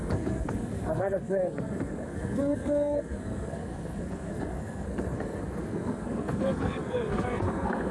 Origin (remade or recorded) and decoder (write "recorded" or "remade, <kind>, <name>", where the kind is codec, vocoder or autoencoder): remade, codec, SNAC